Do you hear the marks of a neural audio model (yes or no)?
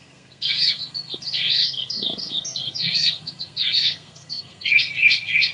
yes